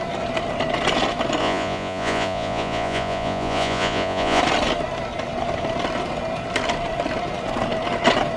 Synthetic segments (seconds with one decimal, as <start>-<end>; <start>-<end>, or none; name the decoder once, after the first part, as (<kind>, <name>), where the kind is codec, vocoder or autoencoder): 1.4-4.4 (vocoder, Vocos)